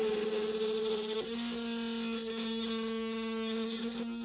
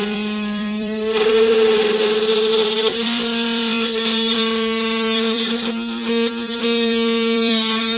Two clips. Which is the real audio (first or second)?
first